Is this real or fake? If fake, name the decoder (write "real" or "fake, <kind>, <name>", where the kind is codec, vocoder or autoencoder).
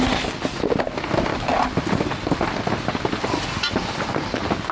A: real